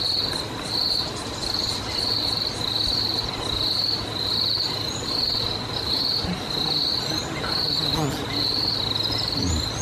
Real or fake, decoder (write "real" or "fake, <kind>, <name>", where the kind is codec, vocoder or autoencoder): real